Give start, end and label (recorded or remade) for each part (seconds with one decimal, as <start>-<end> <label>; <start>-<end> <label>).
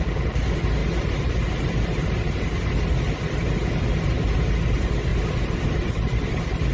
0.0-6.7 recorded